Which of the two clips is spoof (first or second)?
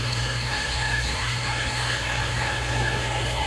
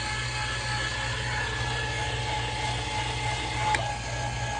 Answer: first